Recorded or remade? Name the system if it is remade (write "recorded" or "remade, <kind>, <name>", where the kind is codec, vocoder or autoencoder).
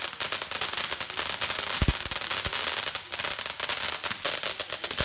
recorded